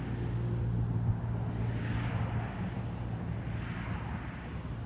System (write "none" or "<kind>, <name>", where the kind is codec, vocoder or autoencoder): none